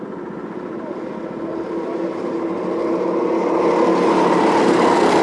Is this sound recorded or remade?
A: recorded